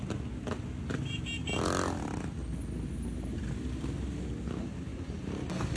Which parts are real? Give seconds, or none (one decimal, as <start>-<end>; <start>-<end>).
0.0-4.9